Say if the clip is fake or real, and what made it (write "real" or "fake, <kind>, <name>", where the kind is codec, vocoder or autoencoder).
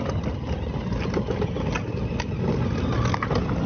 real